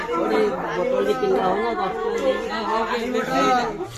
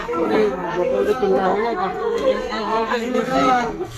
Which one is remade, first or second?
second